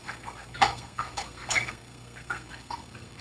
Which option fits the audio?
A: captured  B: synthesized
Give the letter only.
B